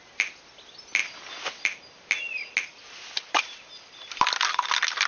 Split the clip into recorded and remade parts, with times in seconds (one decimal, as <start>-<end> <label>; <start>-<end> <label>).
0.0-5.1 recorded